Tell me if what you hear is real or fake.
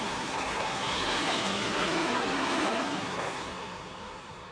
fake